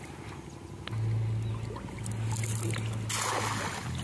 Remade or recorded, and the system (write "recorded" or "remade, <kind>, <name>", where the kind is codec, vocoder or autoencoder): recorded